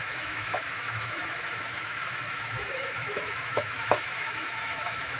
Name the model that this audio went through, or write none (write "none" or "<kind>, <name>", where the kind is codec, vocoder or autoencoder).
autoencoder, DAC-VAE